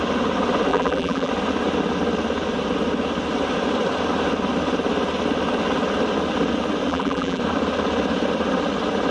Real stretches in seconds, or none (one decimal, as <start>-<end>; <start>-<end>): 0.0-0.7; 1.3-6.9; 7.4-9.1